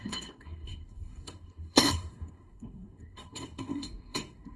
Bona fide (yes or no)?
no